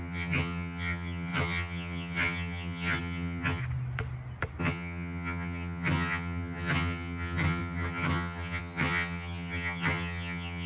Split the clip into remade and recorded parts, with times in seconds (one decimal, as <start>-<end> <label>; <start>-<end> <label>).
0.0-3.6 remade; 3.6-4.6 recorded; 4.6-10.7 remade